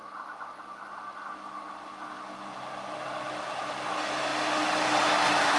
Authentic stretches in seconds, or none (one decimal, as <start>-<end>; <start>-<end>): 0.0-5.6